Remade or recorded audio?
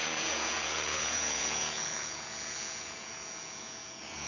remade